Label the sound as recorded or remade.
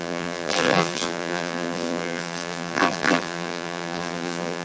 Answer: remade